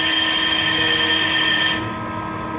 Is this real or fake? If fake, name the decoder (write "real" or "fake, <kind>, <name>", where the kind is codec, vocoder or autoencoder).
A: real